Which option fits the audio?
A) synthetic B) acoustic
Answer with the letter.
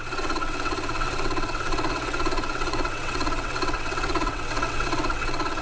A